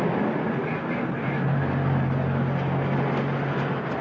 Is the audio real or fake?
real